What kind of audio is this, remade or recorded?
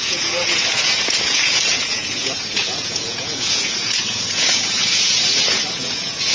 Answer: remade